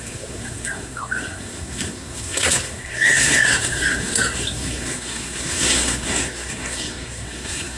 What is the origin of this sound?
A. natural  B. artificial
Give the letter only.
B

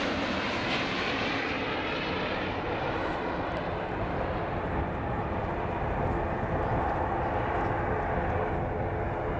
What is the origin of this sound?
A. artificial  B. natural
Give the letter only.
B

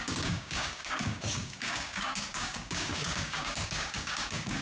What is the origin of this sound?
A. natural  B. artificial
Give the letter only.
B